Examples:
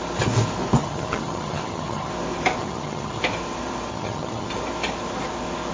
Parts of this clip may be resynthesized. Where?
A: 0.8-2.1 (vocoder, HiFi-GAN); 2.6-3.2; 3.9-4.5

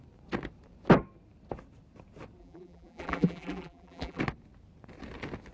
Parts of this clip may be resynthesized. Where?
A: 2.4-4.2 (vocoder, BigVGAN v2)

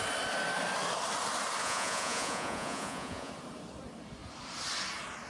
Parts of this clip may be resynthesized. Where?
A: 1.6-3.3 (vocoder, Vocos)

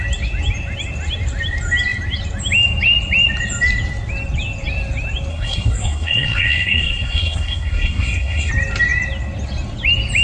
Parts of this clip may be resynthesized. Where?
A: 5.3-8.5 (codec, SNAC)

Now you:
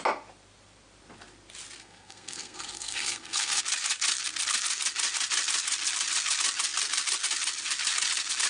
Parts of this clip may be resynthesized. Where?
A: 1.8-3.6 (codec, SNAC)

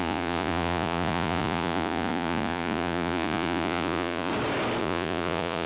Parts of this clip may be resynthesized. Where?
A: 0.0-4.3 (vocoder, Vocos); 4.8-5.7

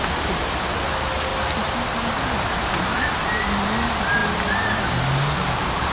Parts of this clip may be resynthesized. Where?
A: 1.3-3.1 (vocoder, BigVGAN v2)